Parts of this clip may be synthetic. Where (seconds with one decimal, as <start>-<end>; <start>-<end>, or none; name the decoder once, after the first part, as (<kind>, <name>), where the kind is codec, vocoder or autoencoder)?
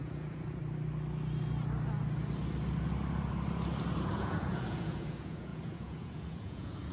0.0-0.6 (vocoder, Vocos); 4.1-6.9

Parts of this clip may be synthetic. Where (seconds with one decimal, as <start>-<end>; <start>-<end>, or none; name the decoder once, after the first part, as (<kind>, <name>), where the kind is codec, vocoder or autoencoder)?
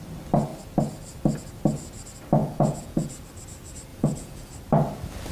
2.4-3.2 (vocoder, Vocos); 3.9-4.5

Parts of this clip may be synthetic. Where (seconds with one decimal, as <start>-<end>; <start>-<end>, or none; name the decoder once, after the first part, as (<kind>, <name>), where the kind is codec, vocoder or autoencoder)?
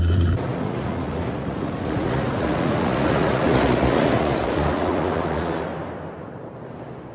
0.0-5.7 (vocoder, Vocos)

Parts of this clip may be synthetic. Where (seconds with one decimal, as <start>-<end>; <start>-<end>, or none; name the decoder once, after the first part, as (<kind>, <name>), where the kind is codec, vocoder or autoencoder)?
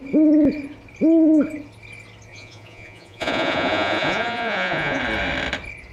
2.3-5.0 (vocoder, Vocos)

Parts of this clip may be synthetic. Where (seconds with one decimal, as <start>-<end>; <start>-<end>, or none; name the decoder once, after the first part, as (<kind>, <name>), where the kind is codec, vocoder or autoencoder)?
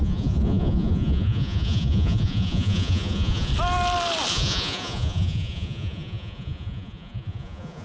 0.0-3.5 (vocoder, Vocos); 4.3-7.8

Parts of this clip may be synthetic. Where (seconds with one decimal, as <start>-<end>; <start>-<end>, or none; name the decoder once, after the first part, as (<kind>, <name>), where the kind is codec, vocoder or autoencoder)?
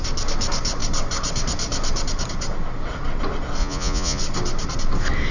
3.6-4.2 (vocoder, Vocos)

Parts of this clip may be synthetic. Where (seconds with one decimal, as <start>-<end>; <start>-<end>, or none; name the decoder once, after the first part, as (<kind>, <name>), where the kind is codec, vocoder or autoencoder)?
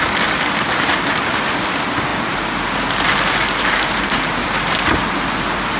none